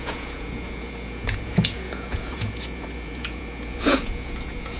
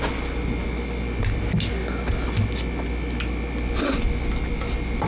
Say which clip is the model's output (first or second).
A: first